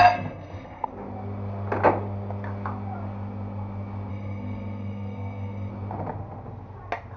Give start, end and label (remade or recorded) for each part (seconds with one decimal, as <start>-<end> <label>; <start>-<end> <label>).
0.0-0.9 remade; 0.9-4.1 recorded; 4.1-5.7 remade; 5.7-7.2 recorded